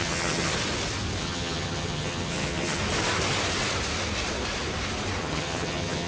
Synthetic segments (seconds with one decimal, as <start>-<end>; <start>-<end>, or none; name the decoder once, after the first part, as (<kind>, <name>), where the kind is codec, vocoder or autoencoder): 0.0-0.5 (vocoder, HiFi-GAN); 1.2-2.8; 5.2-6.1